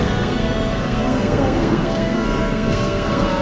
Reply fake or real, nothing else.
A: fake